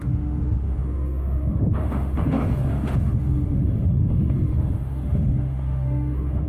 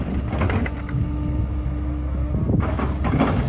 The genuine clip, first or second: second